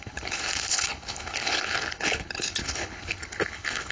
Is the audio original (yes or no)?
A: no